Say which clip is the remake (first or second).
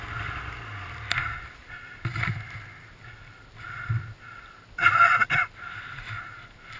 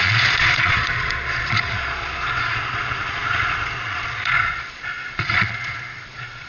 second